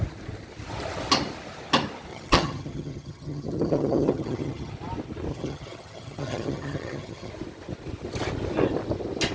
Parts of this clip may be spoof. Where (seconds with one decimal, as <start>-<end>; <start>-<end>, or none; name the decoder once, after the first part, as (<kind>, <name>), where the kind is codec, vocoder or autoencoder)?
2.1-4.7 (vocoder, HiFi-GAN); 5.3-7.3